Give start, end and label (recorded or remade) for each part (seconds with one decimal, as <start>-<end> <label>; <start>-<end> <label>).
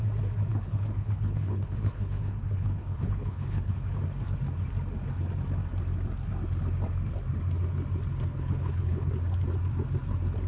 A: 0.0-0.5 recorded; 0.5-3.7 remade; 3.7-8.3 recorded; 8.3-9.1 remade; 9.1-10.5 recorded